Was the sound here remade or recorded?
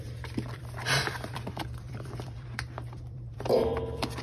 remade